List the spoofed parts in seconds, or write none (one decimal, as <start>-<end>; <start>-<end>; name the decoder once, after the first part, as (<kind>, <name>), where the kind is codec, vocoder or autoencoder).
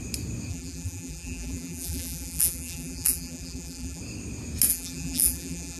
0.5-4.0 (vocoder, BigVGAN v2); 4.7-5.8